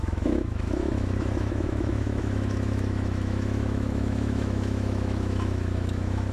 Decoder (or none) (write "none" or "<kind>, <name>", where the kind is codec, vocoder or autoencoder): autoencoder, DAC-VAE